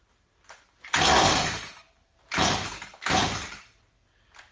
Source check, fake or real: real